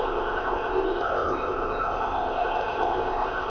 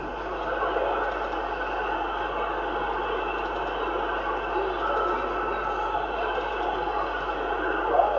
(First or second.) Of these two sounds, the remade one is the first